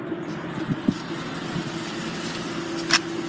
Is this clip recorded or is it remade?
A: recorded